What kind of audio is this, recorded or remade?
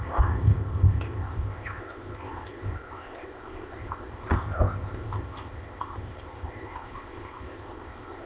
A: remade